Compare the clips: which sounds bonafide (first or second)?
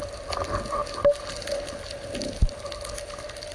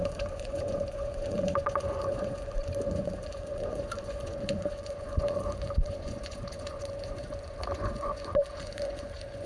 first